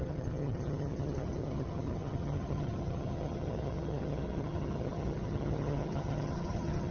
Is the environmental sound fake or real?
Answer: fake